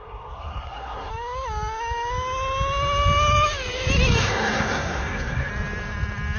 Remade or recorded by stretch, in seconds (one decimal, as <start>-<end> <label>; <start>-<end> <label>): 0.0-1.1 remade; 1.1-4.2 recorded; 4.2-5.5 remade; 5.5-6.4 recorded